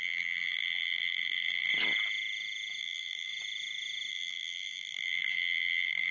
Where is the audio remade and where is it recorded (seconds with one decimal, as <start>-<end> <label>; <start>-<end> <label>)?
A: 0.0-1.7 remade; 1.7-2.8 recorded; 2.8-3.3 remade; 3.3-4.1 recorded; 4.1-6.1 remade